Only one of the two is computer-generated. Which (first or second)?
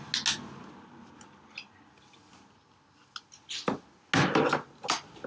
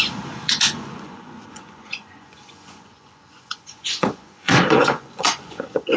second